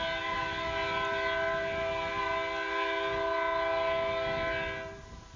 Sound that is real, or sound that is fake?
real